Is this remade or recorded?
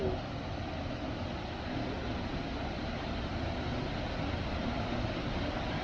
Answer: recorded